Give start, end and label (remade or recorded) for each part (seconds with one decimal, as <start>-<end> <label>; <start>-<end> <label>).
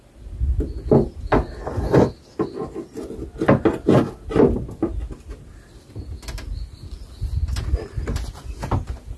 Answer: 0.0-9.2 recorded